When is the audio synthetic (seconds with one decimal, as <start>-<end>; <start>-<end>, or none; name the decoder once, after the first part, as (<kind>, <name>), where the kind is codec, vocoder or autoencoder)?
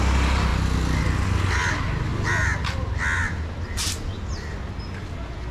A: none